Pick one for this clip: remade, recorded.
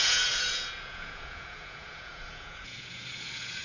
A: remade